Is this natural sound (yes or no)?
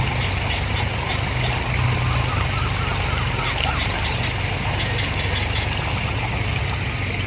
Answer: yes